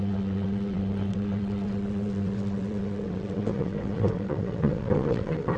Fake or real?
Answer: fake